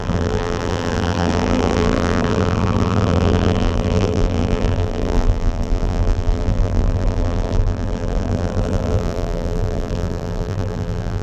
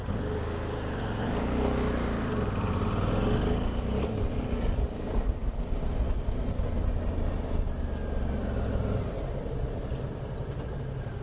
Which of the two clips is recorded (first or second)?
second